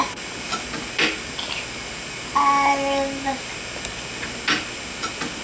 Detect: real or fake real